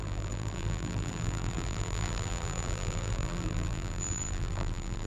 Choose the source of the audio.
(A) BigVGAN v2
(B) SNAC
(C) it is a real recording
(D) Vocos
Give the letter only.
A